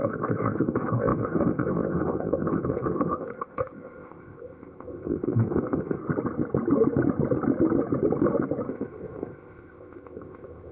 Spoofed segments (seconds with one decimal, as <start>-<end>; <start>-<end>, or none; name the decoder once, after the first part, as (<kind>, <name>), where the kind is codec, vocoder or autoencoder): 0.0-6.0 (codec, ZipCodec); 8.7-10.7